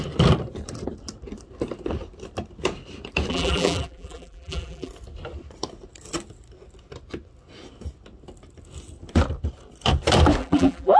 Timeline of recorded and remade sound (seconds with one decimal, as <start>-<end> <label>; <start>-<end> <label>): 0.0-3.3 recorded; 3.3-4.9 remade; 4.9-10.4 recorded; 10.4-11.0 remade

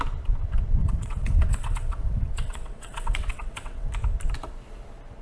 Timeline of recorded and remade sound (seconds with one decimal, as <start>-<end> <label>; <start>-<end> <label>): 0.0-0.8 recorded; 0.8-3.9 remade; 3.9-5.2 recorded